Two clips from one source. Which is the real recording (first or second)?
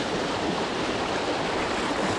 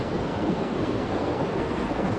first